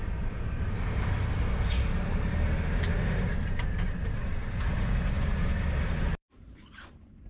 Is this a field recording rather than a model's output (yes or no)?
no